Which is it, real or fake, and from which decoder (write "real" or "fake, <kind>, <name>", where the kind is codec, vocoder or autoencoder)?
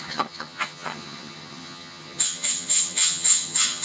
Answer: fake, vocoder, HiFi-GAN